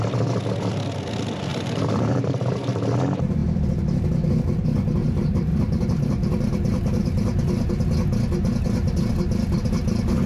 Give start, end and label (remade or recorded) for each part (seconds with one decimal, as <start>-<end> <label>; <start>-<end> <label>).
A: 0.0-1.5 recorded; 1.5-2.7 remade; 2.7-5.0 recorded; 5.0-7.7 remade; 7.7-10.3 recorded